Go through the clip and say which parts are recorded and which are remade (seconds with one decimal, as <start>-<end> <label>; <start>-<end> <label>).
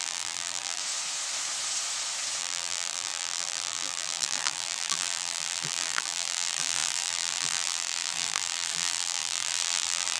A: 0.0-0.8 remade; 0.8-2.4 recorded; 2.4-10.2 remade